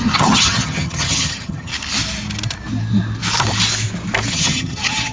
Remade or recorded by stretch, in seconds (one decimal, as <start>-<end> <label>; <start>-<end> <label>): 0.0-1.7 remade; 1.7-4.3 recorded; 4.3-5.1 remade